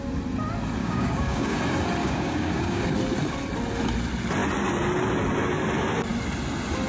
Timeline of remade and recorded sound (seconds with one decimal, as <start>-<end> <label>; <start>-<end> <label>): 0.0-0.8 recorded; 0.8-1.6 remade; 1.6-2.0 recorded; 2.0-2.8 remade; 2.8-6.9 recorded